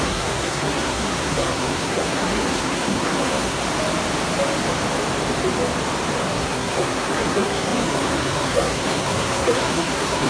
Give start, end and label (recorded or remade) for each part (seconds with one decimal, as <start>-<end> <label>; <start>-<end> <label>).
0.0-3.6 remade; 3.6-6.2 recorded; 6.2-10.3 remade